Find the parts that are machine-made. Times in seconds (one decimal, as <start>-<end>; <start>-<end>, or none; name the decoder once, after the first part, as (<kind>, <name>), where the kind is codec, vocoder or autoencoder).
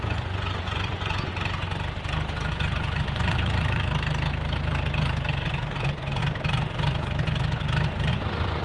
0.0-1.3 (vocoder, Vocos); 2.5-3.9; 5.3-6.2; 8.1-8.6